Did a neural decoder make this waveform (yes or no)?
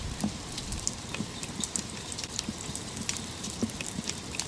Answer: no